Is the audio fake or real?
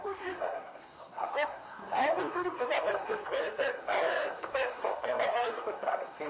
fake